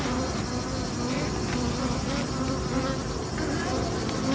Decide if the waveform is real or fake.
real